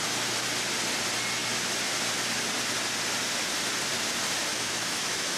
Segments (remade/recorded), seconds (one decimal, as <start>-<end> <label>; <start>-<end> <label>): 0.0-4.5 recorded; 4.5-5.4 remade